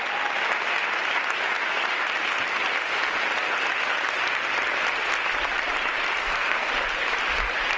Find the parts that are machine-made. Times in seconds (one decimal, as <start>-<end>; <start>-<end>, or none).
6.2-6.7